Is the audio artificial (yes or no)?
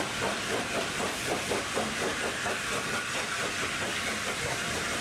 no